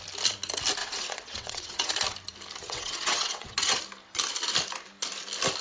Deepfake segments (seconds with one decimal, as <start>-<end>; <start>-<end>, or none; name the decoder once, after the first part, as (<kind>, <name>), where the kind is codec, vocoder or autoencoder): 0.8-1.9 (vocoder, WaveNeXt); 2.6-3.8